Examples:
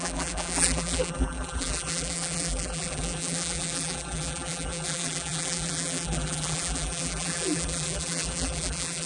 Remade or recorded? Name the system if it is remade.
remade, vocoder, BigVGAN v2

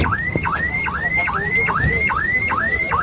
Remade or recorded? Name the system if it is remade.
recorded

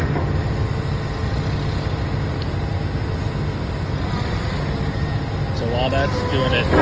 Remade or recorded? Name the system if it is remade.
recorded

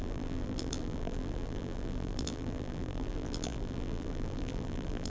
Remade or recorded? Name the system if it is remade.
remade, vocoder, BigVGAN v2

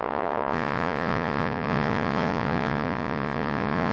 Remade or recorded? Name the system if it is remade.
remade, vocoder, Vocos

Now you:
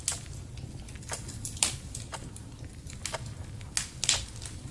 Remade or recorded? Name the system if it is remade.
recorded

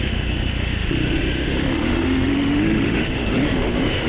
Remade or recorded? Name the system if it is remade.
remade, autoencoder, DAC-VAE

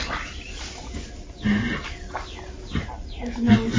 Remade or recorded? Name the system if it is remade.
recorded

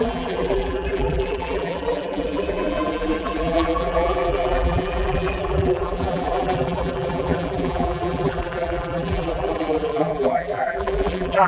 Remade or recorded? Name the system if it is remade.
remade, vocoder, BigVGAN v2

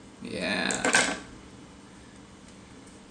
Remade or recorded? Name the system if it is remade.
recorded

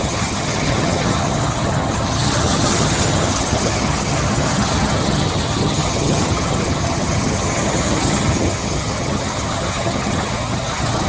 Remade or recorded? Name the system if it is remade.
remade, vocoder, HiFi-GAN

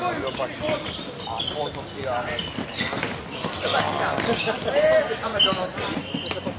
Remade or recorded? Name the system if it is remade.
recorded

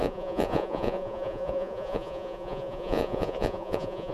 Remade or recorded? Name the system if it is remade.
remade, vocoder, Vocos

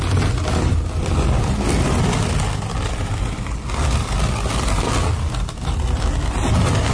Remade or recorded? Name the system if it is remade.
recorded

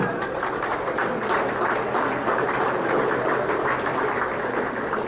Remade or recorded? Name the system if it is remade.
recorded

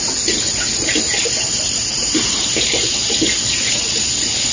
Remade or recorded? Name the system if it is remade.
recorded